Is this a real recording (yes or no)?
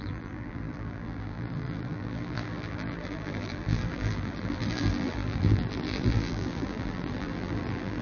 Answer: no